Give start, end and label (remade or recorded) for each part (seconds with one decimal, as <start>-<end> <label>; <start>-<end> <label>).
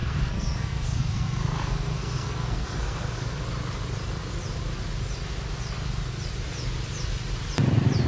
0.0-3.4 remade; 3.4-8.1 recorded